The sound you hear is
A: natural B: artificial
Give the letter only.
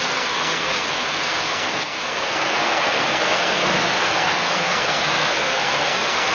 B